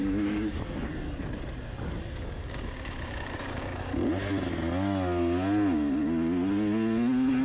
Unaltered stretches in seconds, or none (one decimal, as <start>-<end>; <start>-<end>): 0.9-2.0; 4.1-7.4